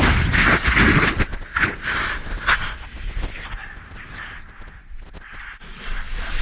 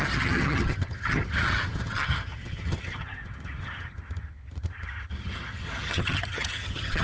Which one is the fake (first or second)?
second